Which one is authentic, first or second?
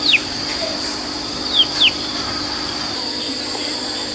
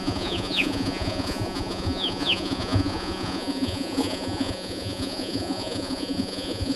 first